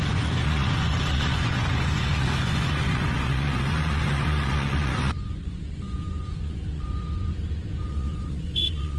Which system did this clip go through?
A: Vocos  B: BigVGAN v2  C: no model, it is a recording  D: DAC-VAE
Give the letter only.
A